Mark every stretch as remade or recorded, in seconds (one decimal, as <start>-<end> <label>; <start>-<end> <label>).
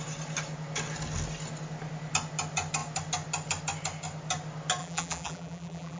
0.0-4.8 recorded; 4.8-6.0 remade